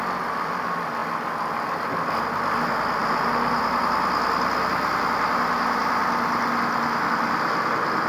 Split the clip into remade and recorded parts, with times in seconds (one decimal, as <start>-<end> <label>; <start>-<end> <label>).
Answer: 0.0-3.0 recorded; 3.0-3.8 remade; 3.8-8.1 recorded